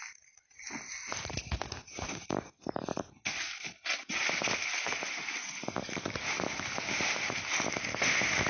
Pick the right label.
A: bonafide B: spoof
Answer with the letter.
A